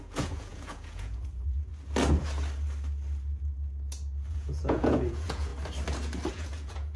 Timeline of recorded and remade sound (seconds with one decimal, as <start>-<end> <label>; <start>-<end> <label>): 0.0-1.7 remade; 1.7-4.3 recorded; 4.3-5.5 remade; 5.5-6.3 recorded; 6.3-7.0 remade